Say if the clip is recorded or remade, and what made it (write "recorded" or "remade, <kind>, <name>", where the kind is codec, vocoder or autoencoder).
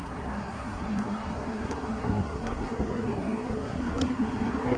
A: remade, codec, SNAC